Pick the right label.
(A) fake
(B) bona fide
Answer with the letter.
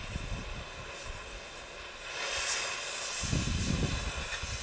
B